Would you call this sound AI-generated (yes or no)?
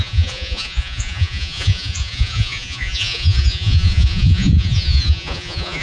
yes